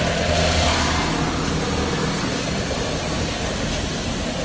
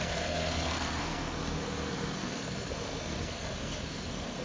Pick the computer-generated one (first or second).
second